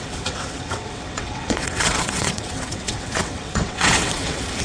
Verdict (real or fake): fake